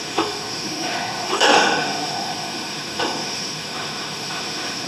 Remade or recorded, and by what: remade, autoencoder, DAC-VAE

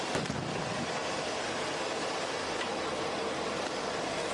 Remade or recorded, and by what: recorded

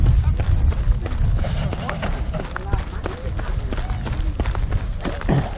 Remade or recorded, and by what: recorded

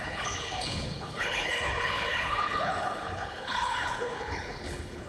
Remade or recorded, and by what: remade, codec, HILCodec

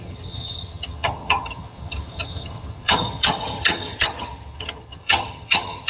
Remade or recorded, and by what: remade, vocoder, HiFi-GAN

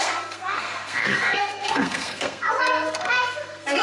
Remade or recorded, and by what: remade, codec, SNAC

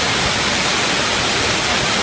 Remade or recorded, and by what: recorded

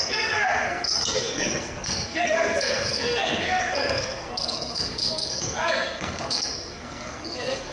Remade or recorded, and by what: remade, codec, SNAC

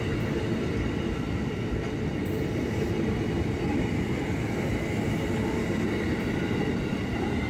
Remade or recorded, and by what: recorded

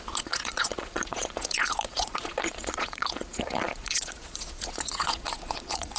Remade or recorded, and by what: remade, vocoder, Vocos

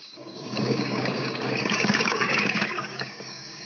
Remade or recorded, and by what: remade, codec, DAC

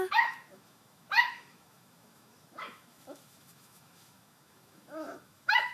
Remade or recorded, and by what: remade, autoencoder, DAC-VAE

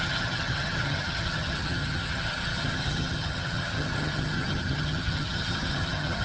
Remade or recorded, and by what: remade, vocoder, HiFi-GAN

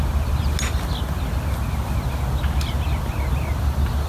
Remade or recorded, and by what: recorded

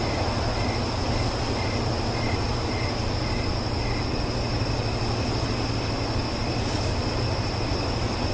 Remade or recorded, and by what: recorded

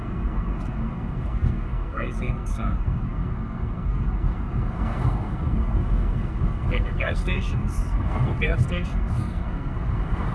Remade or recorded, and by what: remade, codec, SNAC